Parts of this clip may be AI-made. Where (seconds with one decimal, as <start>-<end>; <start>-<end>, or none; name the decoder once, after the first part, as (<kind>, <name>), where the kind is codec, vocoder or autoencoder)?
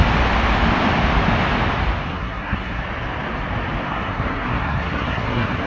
2.1-2.8 (codec, SNAC); 3.9-5.7